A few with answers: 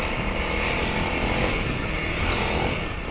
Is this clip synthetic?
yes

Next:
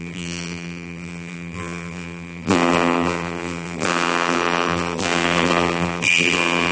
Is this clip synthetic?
yes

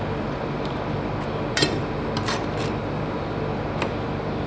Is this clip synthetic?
yes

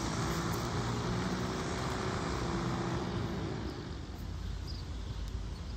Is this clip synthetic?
no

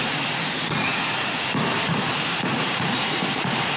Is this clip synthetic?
yes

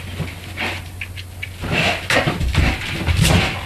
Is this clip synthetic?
no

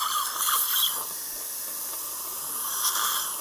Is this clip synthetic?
yes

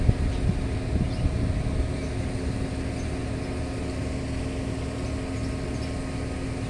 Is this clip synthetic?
no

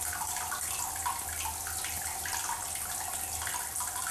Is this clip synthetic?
no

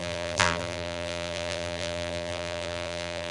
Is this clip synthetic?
yes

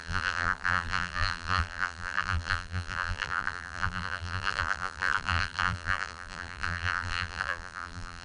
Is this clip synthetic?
yes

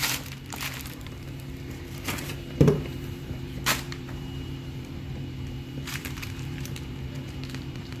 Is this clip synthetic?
yes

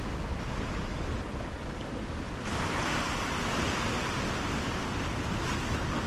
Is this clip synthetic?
no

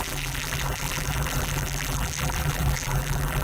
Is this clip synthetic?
yes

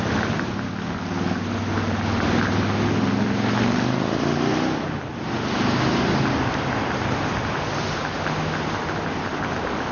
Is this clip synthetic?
no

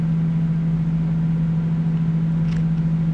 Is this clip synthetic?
no